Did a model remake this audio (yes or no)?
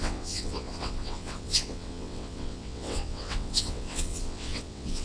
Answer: yes